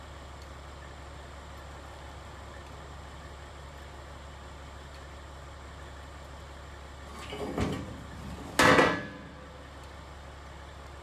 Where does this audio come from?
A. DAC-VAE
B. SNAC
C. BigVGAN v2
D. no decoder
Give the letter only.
D